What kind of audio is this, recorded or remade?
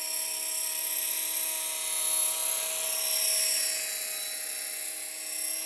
recorded